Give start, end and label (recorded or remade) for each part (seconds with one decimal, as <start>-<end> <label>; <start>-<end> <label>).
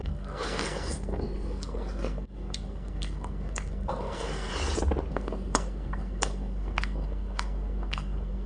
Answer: 0.0-4.5 remade; 4.5-5.1 recorded; 5.1-8.5 remade